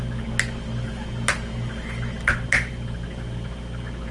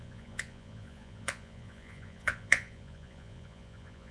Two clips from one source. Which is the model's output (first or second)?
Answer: second